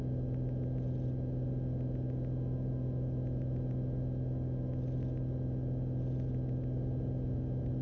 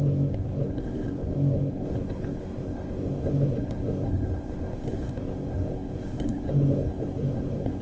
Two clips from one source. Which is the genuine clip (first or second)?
first